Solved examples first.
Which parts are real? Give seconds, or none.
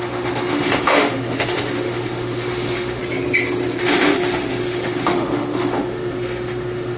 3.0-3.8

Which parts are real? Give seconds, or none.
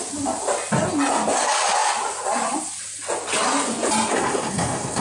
0.0-4.1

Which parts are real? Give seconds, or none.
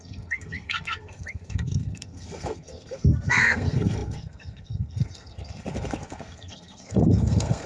none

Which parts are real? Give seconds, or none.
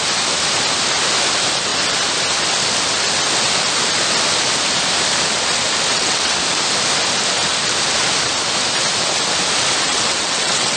0.0-5.9; 6.4-9.9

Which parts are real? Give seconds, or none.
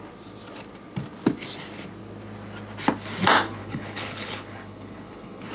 0.0-3.6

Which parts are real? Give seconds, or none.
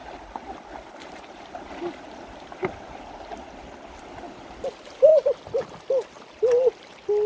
0.0-7.3